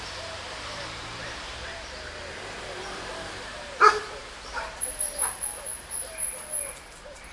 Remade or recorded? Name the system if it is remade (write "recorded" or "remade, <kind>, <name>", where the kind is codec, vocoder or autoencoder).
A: remade, vocoder, BigVGAN v2